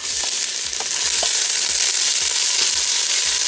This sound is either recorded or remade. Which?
recorded